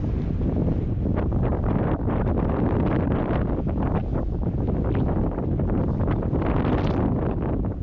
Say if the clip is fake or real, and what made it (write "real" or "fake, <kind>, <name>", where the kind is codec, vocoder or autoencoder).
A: real